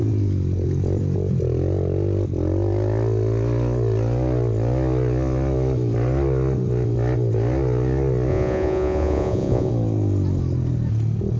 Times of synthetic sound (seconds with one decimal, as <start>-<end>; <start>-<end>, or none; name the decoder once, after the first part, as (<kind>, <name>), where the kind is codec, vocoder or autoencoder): 8.3-9.7 (vocoder, Vocos)